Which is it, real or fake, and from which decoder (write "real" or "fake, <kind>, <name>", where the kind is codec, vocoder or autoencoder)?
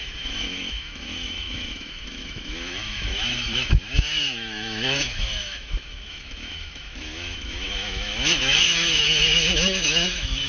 fake, autoencoder, DAC-VAE